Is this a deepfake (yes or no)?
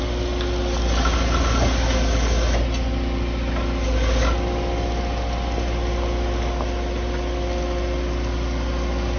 no